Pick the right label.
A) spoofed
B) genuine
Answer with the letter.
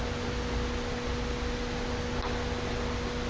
B